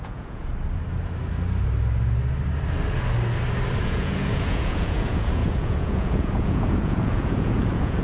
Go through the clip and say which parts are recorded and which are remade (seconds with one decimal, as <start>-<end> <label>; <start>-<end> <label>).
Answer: 0.0-0.5 remade; 0.5-3.8 recorded; 3.8-8.0 remade